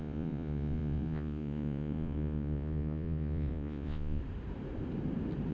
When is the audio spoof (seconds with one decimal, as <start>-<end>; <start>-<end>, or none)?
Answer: 0.0-4.2